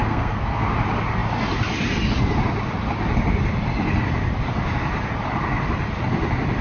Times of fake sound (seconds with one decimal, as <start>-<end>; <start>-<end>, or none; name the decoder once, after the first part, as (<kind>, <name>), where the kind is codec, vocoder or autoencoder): 0.0-0.7 (codec, SNAC)